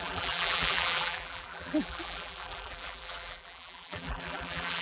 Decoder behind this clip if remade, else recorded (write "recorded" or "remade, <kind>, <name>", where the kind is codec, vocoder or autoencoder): remade, vocoder, BigVGAN v2